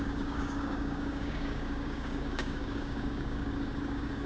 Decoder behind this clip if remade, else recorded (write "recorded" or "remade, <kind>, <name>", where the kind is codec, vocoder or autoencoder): remade, codec, DAC